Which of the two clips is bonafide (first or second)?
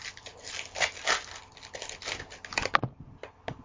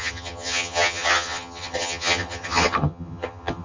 first